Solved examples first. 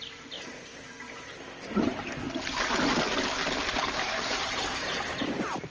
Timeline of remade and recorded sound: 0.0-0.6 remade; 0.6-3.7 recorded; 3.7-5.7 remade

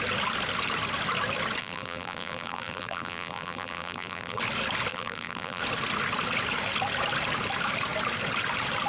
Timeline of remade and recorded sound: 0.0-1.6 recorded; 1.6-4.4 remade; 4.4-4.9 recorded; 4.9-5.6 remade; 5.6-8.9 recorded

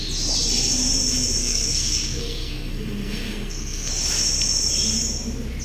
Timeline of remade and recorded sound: 0.0-1.4 recorded; 1.4-3.9 remade; 3.9-5.6 recorded

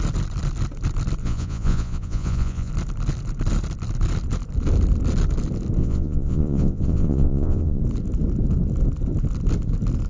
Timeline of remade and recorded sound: 0.0-1.2 recorded; 1.2-2.7 remade; 2.7-5.8 recorded; 5.8-7.8 remade; 7.8-10.1 recorded

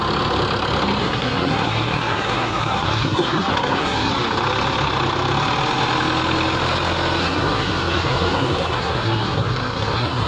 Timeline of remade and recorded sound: 0.0-1.0 recorded; 1.0-4.1 remade; 4.1-7.2 recorded; 7.2-10.3 remade

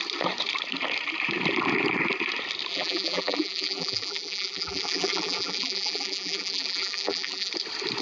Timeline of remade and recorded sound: 0.0-2.7 recorded; 2.7-7.5 remade; 7.5-8.0 recorded